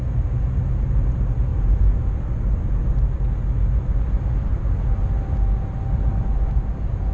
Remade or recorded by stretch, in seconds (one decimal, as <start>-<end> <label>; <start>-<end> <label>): 0.0-7.1 recorded